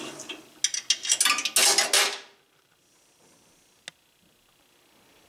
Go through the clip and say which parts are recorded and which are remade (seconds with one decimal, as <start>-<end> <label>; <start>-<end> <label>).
0.0-5.3 recorded